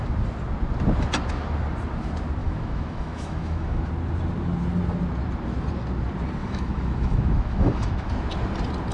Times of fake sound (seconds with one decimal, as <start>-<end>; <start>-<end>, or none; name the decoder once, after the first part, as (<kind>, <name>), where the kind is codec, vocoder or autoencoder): 2.4-3.9 (autoencoder, DAC-VAE); 6.4-8.1